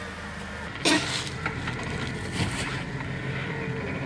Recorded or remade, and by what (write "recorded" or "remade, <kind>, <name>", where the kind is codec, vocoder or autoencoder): recorded